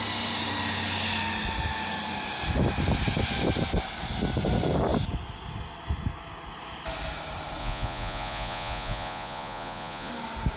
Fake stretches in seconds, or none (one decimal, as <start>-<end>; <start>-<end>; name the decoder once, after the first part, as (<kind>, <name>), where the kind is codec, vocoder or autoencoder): 7.6-10.1 (vocoder, Vocos)